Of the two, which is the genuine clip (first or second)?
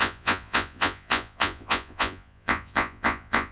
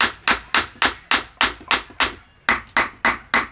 second